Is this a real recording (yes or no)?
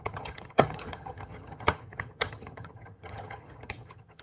no